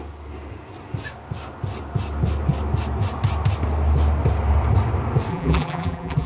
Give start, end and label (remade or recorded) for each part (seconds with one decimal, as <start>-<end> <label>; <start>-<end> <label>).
0.0-5.3 recorded; 5.3-6.3 remade

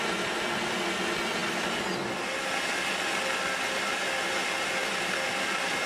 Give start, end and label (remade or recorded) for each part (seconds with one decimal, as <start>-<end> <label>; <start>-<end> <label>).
0.0-5.9 recorded

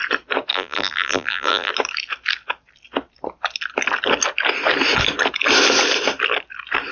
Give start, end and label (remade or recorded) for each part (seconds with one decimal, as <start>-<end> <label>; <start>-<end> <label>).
0.0-0.5 recorded; 0.5-1.7 remade; 1.7-6.9 recorded